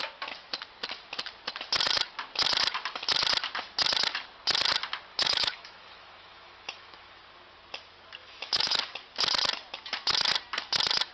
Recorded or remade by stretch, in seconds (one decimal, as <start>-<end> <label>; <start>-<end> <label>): 0.0-5.1 recorded; 5.1-7.2 remade; 7.2-8.2 recorded; 8.2-8.7 remade; 8.7-11.1 recorded